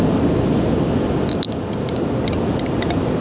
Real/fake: real